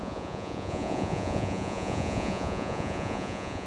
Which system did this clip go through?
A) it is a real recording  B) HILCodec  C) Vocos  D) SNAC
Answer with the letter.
C